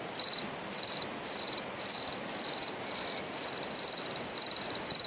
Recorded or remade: recorded